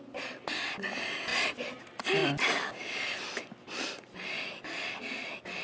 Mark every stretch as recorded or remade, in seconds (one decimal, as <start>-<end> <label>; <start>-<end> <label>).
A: 0.0-1.3 recorded; 1.3-1.8 remade; 1.8-2.2 recorded; 2.2-5.0 remade; 5.0-5.6 recorded